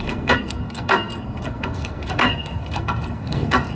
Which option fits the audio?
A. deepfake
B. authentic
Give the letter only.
A